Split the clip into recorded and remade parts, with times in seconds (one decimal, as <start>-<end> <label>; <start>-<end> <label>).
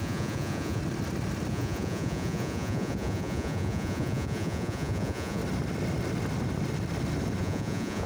0.0-0.8 remade; 0.8-1.5 recorded; 1.5-5.4 remade; 5.4-7.4 recorded; 7.4-8.1 remade